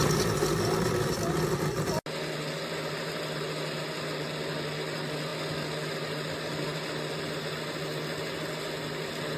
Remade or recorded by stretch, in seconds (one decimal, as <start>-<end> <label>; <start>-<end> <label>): 0.0-9.4 recorded